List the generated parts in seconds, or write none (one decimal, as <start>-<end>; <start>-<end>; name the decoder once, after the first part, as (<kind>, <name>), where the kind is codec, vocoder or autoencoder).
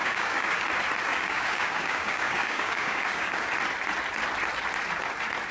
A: 0.0-0.6 (codec, DAC); 1.1-3.5